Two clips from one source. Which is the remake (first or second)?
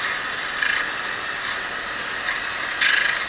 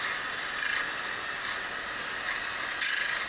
first